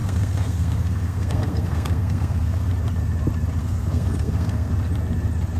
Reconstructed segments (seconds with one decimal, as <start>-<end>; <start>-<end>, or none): 0.0-2.7; 3.6-4.7